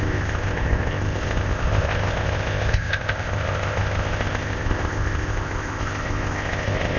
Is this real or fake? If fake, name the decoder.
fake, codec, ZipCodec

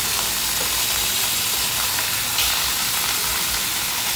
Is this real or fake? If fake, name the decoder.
real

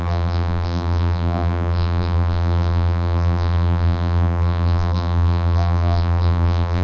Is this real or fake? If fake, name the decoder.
fake, vocoder, BigVGAN v2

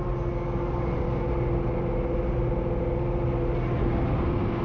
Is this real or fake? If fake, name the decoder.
real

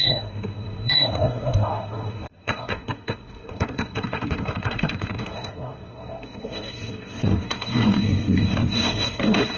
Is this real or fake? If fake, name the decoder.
fake, codec, SNAC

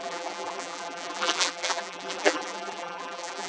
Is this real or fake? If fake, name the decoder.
fake, vocoder, BigVGAN v2